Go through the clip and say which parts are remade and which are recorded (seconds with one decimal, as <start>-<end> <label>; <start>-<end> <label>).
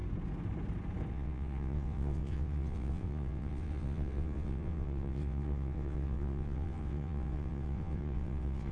0.0-1.1 recorded; 1.1-8.7 remade